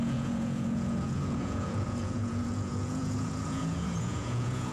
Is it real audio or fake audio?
fake